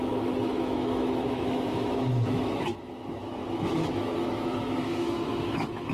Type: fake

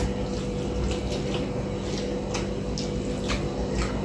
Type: real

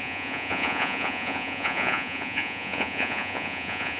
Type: fake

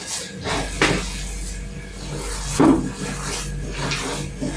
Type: real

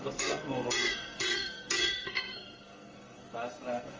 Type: fake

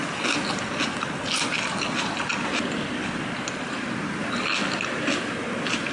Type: real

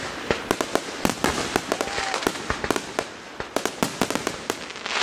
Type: real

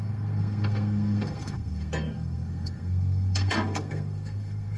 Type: fake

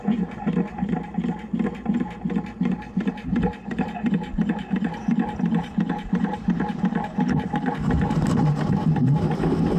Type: fake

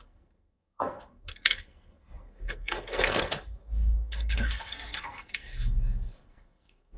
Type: fake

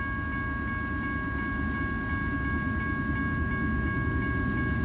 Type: real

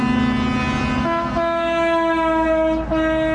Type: real